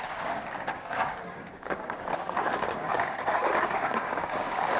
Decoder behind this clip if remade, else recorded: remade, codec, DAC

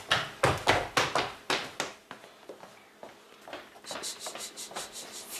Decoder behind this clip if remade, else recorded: recorded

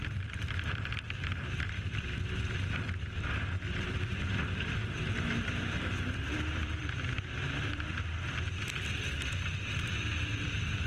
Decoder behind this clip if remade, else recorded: remade, vocoder, BigVGAN v2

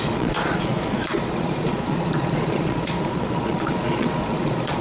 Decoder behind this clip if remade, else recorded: remade, vocoder, Vocos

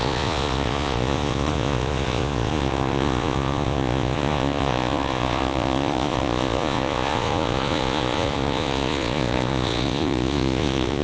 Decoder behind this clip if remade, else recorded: remade, vocoder, Vocos